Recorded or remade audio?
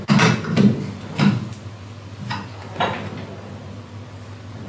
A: recorded